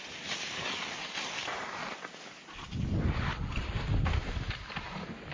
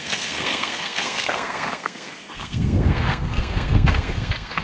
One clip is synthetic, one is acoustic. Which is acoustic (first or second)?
first